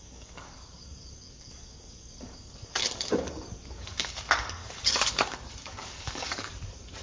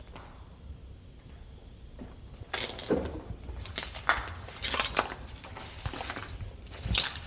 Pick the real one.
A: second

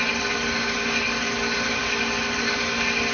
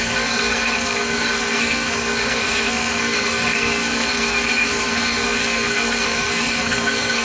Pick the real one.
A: first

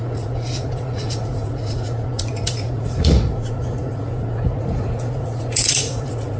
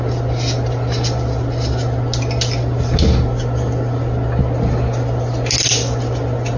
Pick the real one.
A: second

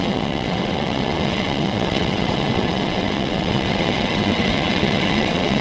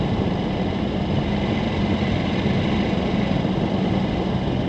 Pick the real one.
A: second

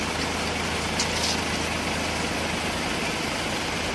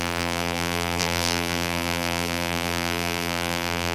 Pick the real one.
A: first